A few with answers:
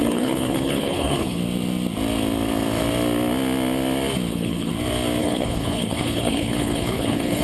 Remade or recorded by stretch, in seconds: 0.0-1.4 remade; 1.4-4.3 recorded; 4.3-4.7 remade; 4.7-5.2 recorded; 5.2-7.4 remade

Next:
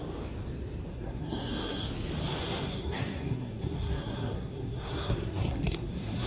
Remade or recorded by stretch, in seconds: 0.0-0.9 recorded; 0.9-1.8 remade; 1.8-2.4 recorded; 2.4-6.3 remade

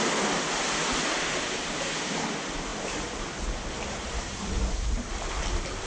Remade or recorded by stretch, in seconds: 0.0-5.9 recorded

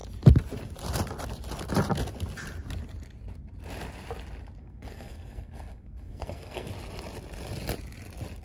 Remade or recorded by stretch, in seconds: 0.0-4.6 recorded; 4.6-6.7 remade; 6.7-8.4 recorded